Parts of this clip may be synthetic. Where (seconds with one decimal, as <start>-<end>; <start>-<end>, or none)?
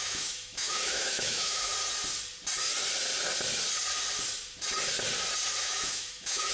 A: 0.0-1.7; 5.6-6.5